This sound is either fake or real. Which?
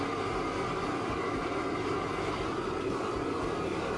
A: real